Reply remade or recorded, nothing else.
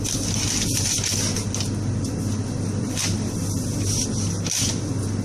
recorded